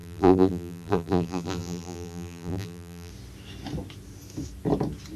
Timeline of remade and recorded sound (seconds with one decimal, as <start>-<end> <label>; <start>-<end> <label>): 0.0-3.1 remade; 3.1-5.2 recorded